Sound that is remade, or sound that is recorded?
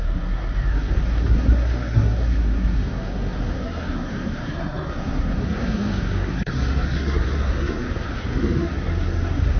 remade